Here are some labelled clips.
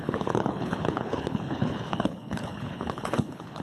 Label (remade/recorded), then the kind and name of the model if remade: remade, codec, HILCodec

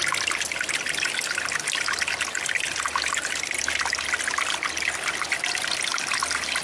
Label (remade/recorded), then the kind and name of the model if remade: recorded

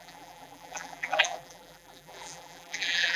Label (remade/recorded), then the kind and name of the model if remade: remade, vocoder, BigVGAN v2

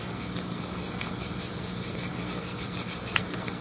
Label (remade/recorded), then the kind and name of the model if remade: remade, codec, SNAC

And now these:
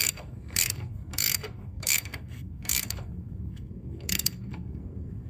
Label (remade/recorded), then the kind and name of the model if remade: remade, codec, SNAC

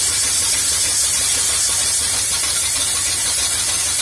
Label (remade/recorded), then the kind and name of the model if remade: recorded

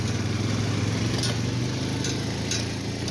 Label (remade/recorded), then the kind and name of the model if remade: recorded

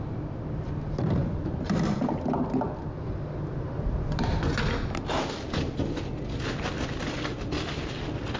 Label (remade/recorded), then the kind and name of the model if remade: recorded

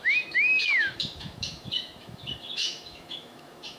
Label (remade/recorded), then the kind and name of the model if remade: remade, autoencoder, DAC-VAE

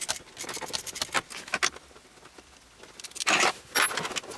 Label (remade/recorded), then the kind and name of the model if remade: recorded